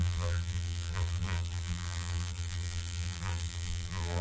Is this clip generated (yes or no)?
yes